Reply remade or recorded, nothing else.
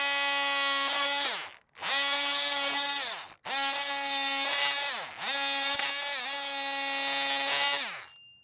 recorded